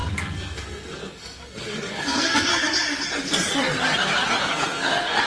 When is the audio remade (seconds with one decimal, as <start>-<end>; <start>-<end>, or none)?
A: 0.0-2.5; 4.4-5.3